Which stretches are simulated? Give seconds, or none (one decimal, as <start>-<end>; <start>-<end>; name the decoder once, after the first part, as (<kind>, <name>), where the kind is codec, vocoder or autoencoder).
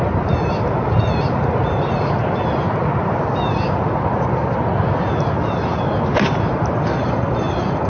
7.0-7.9 (vocoder, BigVGAN v2)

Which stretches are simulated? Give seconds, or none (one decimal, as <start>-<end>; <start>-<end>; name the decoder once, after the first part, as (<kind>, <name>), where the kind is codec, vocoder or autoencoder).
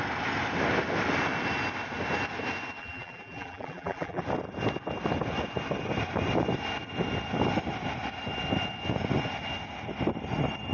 2.8-4.2 (vocoder, BigVGAN v2)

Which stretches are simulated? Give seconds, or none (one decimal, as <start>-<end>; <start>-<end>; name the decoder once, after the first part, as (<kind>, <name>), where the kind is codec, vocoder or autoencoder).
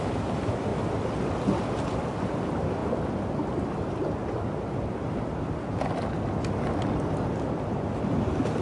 0.0-0.7 (vocoder, BigVGAN v2); 2.2-4.2; 7.8-8.6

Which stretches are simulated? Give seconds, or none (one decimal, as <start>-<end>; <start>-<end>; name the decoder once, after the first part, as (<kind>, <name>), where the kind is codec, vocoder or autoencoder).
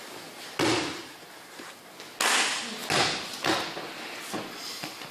none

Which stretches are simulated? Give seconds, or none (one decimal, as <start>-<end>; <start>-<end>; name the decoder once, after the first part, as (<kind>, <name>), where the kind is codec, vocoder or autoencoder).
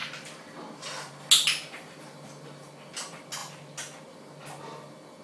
none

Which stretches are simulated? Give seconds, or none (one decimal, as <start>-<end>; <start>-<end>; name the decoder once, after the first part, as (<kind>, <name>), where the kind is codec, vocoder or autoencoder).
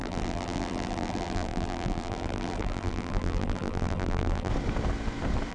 0.0-4.5 (vocoder, BigVGAN v2)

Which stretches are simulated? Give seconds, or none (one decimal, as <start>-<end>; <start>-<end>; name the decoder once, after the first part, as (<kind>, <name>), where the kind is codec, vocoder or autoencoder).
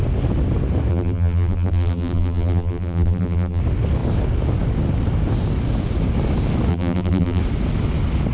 0.9-3.6 (vocoder, BigVGAN v2); 6.7-7.4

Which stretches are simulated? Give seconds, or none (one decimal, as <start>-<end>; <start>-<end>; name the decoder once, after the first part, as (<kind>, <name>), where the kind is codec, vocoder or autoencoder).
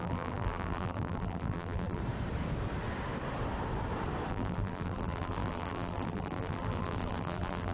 0.0-2.0 (vocoder, BigVGAN v2); 4.3-7.7